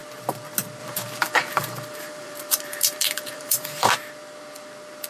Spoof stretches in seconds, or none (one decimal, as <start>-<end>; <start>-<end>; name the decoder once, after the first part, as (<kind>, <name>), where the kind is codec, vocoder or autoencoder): 0.8-3.9 (vocoder, BigVGAN v2)